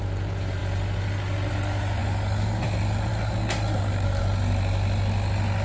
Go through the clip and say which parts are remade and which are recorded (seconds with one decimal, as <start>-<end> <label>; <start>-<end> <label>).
0.0-2.0 recorded; 2.0-2.6 remade; 2.6-3.1 recorded; 3.1-4.2 remade; 4.2-5.6 recorded